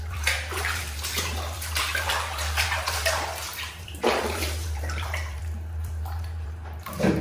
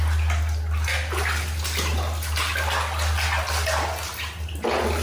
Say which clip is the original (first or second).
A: second